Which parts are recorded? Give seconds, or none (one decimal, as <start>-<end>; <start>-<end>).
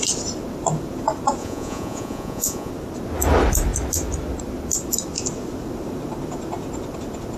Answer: 0.0-1.4; 2.7-7.4